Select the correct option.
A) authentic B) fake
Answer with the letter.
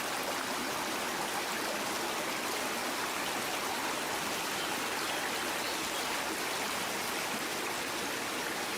A